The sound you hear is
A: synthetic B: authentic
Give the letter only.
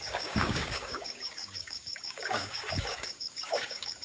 A